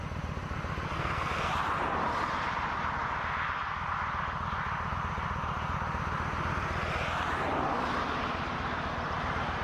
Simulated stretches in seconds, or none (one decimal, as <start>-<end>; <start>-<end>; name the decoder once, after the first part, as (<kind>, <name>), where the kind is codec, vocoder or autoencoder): 0.9-1.5 (codec, SNAC)